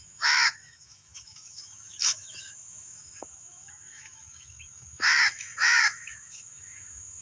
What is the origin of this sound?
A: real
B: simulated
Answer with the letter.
B